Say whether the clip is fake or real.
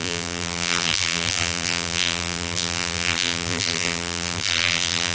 fake